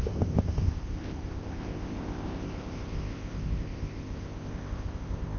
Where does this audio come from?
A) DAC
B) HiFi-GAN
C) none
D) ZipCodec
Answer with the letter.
D